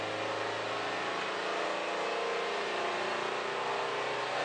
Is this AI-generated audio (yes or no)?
no